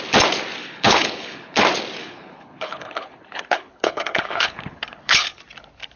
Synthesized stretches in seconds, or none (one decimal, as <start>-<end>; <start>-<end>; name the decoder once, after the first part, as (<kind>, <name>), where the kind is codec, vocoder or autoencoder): 0.6-1.6 (codec, HILCodec); 2.0-5.4